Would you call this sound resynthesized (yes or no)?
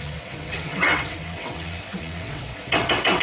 yes